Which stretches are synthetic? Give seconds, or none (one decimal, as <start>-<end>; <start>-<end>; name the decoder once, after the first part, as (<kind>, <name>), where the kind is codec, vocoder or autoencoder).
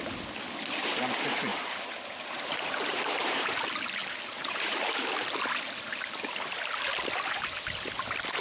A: 1.5-3.6 (vocoder, BigVGAN v2); 4.0-5.1